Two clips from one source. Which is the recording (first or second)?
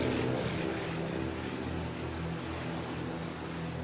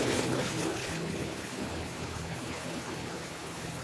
first